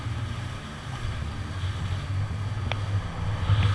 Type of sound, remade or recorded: recorded